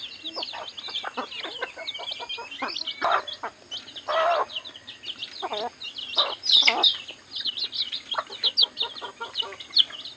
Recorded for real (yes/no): yes